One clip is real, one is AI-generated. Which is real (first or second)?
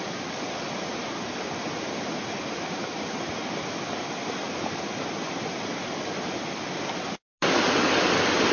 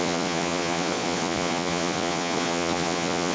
first